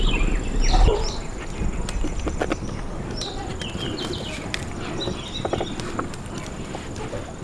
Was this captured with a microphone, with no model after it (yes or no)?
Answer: yes